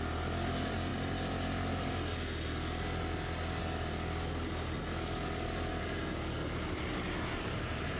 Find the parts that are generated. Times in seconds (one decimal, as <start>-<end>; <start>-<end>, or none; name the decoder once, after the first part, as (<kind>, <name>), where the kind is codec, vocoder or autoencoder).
none